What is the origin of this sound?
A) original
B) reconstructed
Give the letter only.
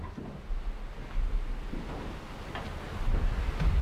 A